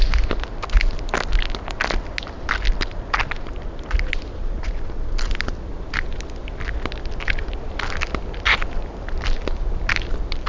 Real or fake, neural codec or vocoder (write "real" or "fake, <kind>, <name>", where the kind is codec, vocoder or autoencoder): real